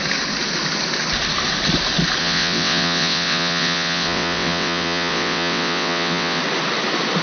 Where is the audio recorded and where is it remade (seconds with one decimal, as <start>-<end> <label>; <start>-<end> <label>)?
0.0-2.2 recorded; 2.2-6.4 remade; 6.4-7.2 recorded